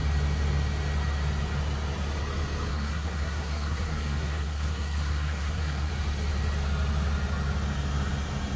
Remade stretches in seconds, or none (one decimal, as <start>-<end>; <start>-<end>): 2.7-5.9